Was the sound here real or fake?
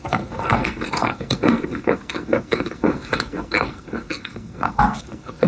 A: fake